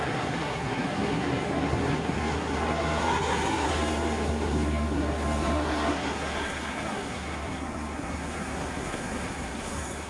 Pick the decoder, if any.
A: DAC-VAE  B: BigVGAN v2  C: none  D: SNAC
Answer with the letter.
D